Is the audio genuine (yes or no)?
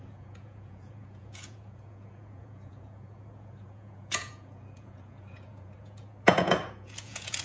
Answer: no